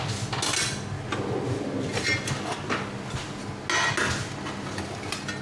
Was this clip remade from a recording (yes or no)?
no